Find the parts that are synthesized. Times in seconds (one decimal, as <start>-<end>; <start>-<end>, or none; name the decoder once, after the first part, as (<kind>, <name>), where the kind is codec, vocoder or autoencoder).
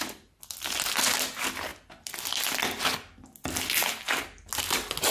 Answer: none